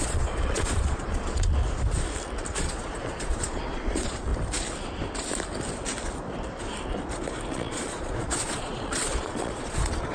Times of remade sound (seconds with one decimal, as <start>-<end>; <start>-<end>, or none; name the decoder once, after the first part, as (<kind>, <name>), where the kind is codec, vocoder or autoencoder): 0.0-1.6 (vocoder, Vocos); 2.6-4.3; 7.5-10.1